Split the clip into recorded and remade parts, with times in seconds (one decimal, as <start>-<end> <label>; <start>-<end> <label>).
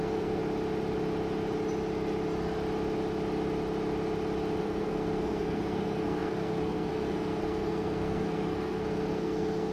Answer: 0.0-0.4 remade; 0.4-4.6 recorded; 4.6-9.7 remade